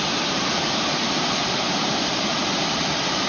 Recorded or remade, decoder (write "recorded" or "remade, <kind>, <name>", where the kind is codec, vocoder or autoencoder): remade, vocoder, BigVGAN v2